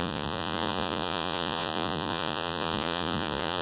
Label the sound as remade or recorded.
remade